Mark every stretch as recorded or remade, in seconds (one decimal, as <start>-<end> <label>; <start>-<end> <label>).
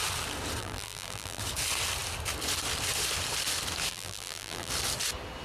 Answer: 0.0-0.6 recorded; 0.6-1.4 remade; 1.4-3.9 recorded; 3.9-4.7 remade; 4.7-5.4 recorded